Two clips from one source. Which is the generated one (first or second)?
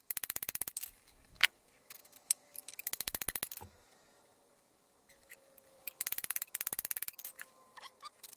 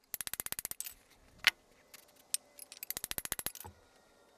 first